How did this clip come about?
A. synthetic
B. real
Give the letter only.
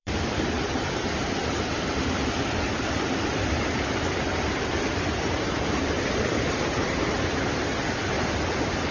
A